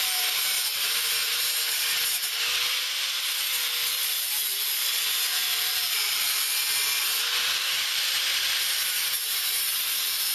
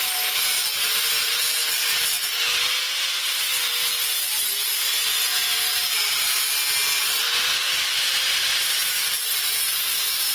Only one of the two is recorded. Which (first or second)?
second